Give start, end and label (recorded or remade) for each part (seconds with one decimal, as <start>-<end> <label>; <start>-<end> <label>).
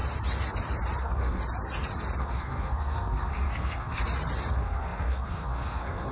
0.0-1.0 recorded; 1.0-1.4 remade; 1.4-2.2 recorded; 2.2-4.0 remade; 4.0-4.5 recorded; 4.5-6.1 remade